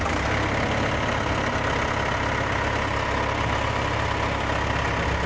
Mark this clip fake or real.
real